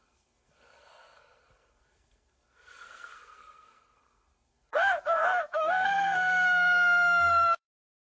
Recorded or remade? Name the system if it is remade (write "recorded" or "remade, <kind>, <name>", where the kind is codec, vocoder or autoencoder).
remade, codec, SNAC